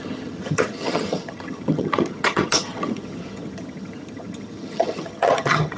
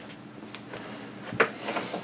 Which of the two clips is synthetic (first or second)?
first